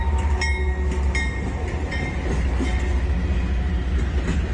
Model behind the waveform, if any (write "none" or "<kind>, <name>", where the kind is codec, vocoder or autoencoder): none